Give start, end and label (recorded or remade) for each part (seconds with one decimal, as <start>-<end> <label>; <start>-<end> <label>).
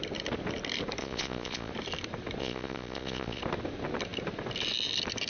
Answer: 0.0-1.0 recorded; 1.0-1.7 remade; 1.7-2.4 recorded; 2.4-3.4 remade; 3.4-5.3 recorded